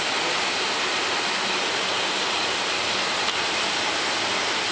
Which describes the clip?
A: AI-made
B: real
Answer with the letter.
B